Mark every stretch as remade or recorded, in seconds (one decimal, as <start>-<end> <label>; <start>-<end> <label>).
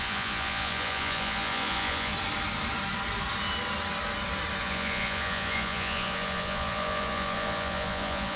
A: 0.0-2.1 remade; 2.1-4.6 recorded; 4.6-8.4 remade